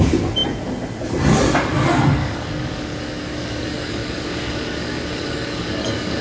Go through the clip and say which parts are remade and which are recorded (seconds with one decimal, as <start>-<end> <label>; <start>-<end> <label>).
0.0-2.2 recorded; 2.2-6.2 remade